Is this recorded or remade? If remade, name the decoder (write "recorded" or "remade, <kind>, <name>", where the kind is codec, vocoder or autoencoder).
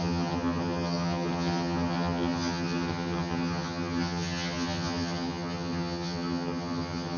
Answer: remade, vocoder, HiFi-GAN